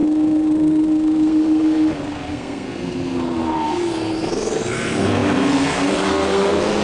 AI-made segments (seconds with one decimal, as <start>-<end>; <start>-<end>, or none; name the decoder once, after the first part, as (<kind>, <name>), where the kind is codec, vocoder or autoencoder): 0.0-6.8 (codec, SNAC)

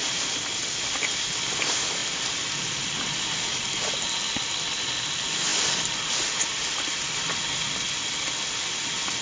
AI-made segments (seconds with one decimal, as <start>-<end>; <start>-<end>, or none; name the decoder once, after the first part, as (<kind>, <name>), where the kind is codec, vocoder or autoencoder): none

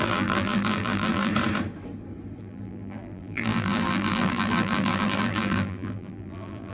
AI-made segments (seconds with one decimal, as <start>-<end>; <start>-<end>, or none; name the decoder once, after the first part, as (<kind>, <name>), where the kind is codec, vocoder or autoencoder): 0.0-1.3 (vocoder, BigVGAN v2); 2.4-6.7